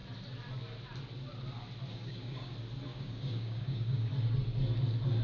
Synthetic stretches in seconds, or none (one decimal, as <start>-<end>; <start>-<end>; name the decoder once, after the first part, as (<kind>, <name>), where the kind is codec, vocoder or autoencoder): 1.9-2.5 (codec, DAC); 2.9-4.1

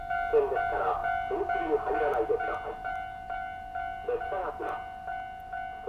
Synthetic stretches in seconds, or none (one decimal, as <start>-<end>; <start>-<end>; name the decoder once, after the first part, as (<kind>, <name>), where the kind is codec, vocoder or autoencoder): none

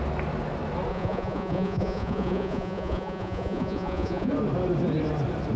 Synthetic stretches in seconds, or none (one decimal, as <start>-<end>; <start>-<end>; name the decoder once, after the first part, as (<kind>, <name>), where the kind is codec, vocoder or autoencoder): 0.9-4.3 (vocoder, Vocos)

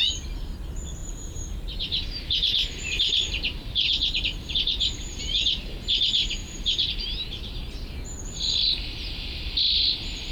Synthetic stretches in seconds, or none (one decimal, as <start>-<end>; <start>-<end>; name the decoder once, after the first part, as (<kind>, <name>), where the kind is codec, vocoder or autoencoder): 1.0-5.2 (vocoder, BigVGAN v2); 6.4-7.9

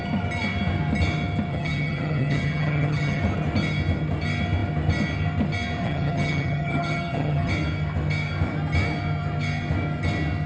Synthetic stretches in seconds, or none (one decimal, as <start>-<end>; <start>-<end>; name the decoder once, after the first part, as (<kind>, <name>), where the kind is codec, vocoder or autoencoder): 1.5-3.2 (vocoder, HiFi-GAN); 5.8-7.5

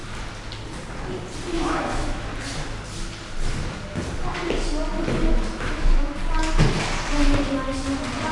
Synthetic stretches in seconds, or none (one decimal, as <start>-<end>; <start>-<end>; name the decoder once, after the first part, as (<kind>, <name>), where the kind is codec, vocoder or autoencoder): 1.5-2.3 (autoencoder, DAC-VAE); 5.3-6.2